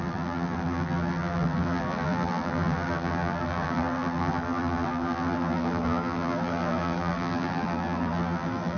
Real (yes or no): no